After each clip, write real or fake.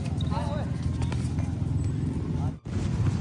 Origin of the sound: real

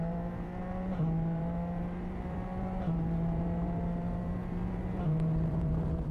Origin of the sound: fake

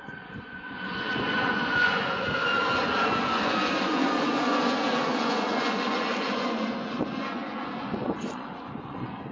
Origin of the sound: fake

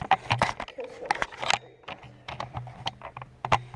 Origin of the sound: real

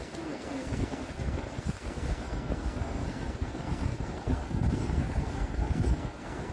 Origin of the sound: fake